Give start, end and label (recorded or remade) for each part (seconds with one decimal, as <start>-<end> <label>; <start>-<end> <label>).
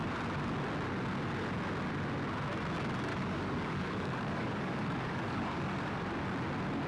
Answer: 0.0-3.1 recorded; 3.1-6.0 remade; 6.0-6.9 recorded